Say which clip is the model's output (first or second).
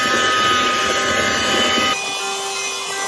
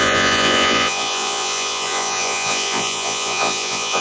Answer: second